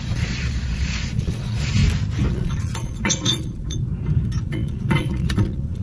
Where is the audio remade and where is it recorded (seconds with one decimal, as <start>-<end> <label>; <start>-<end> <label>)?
0.0-1.8 remade; 1.8-2.3 recorded; 2.3-3.9 remade; 3.9-4.4 recorded; 4.4-5.8 remade